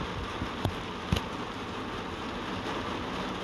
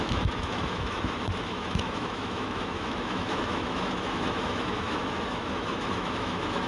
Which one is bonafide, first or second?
first